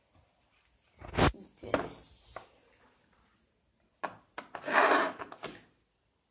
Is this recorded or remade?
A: recorded